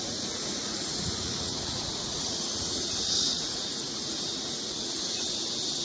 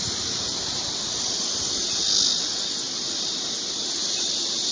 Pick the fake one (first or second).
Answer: first